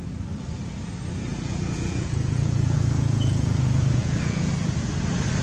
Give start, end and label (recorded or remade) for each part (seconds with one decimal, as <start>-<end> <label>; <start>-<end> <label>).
0.0-1.3 recorded; 1.3-4.5 remade; 4.5-5.4 recorded